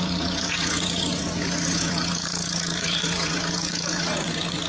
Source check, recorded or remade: remade